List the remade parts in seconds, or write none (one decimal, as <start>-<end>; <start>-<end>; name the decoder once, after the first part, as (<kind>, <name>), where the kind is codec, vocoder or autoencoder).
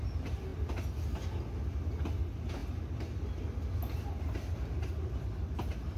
none